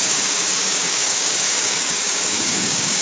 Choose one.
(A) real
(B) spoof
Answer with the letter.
B